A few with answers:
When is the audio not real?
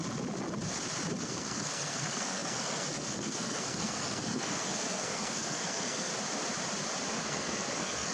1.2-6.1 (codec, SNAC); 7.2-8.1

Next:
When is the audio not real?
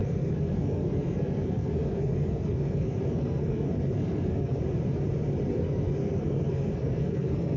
0.0-4.6 (codec, SNAC); 5.5-7.6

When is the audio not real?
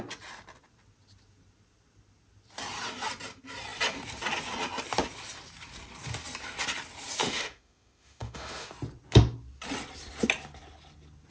7.2-8.7 (autoencoder, DAC-VAE)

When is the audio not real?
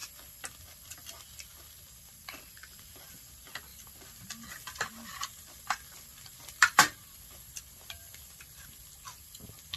3.7-8.4 (vocoder, BigVGAN v2)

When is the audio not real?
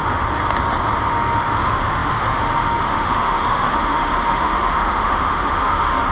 0.0-0.4 (autoencoder, DAC-VAE); 1.1-6.1